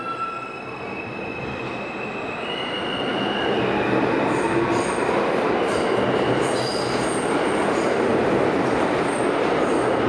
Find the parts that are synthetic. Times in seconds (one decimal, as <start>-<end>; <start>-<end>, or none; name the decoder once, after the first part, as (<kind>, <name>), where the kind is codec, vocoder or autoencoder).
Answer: none